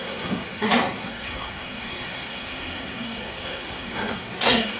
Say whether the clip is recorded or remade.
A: remade